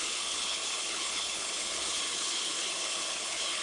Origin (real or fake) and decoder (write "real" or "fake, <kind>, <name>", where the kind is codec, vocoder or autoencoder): fake, codec, HILCodec